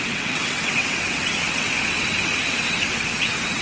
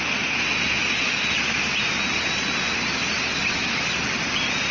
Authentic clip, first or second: second